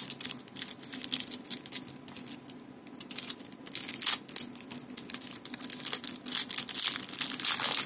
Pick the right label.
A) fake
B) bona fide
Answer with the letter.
B